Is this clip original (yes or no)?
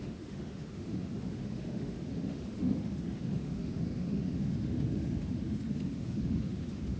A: no